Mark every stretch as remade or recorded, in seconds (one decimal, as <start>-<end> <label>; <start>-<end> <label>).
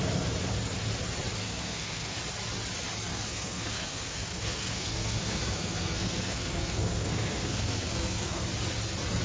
0.0-1.4 recorded; 1.4-2.2 remade; 2.2-3.1 recorded; 3.1-8.4 remade; 8.4-9.2 recorded